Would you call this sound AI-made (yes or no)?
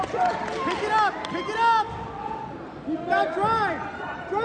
no